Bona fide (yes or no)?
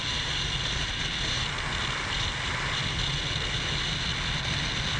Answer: yes